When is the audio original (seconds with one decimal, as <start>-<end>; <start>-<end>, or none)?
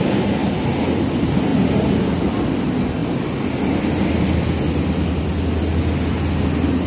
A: 0.0-6.9